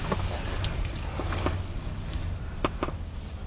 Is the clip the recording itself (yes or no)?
yes